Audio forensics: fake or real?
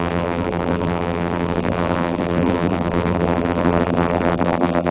fake